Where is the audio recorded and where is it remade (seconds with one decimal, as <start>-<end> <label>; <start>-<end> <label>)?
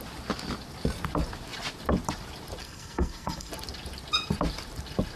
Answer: 0.0-2.6 recorded; 2.6-3.5 remade; 3.5-5.2 recorded